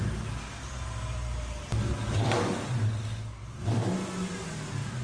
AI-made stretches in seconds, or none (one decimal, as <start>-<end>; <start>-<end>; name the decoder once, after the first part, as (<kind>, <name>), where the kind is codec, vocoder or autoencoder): none